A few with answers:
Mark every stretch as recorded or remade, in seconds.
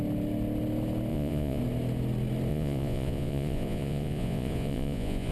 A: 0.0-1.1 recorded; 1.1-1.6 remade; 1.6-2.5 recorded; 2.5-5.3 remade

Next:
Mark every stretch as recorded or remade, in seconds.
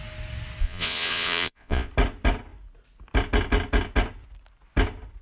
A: 0.0-0.6 recorded; 0.6-1.9 remade; 1.9-5.2 recorded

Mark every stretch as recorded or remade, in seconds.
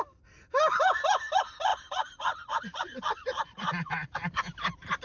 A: 0.0-1.7 recorded; 1.7-3.9 remade; 3.9-5.0 recorded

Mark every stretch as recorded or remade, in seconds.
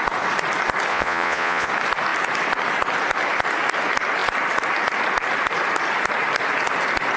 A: 0.0-0.9 recorded; 0.9-1.7 remade; 1.7-7.2 recorded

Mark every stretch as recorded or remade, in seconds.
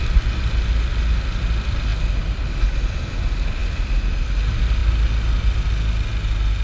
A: 0.0-6.6 recorded